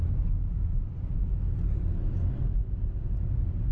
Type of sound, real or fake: real